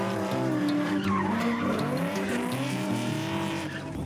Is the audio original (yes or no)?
no